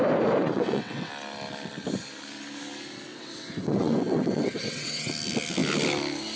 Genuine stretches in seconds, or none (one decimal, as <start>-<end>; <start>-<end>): 0.0-0.4; 1.1-3.1; 5.1-6.4